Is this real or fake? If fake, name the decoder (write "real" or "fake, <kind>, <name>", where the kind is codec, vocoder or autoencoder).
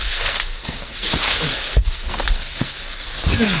fake, codec, SNAC